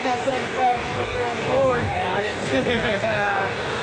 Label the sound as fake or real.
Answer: fake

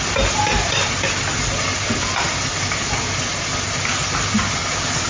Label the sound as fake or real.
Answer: real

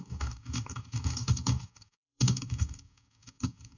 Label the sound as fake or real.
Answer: fake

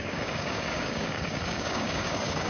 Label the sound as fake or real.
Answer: fake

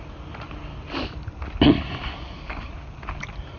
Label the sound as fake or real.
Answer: real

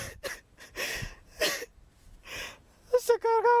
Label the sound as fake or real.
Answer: real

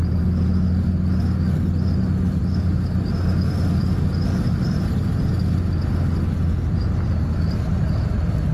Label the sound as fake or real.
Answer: real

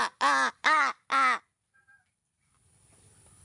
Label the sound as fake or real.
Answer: real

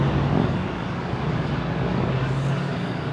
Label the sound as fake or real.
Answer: fake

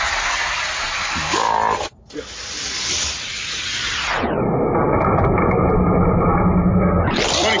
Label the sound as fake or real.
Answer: real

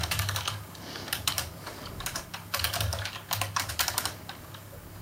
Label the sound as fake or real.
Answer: fake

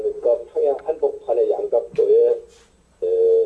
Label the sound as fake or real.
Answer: real